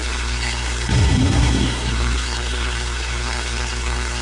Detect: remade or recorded remade